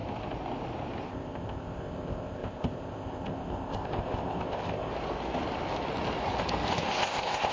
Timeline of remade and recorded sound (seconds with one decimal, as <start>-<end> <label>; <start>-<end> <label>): 0.0-1.1 recorded; 1.1-4.9 remade; 4.9-6.9 recorded; 6.9-7.5 remade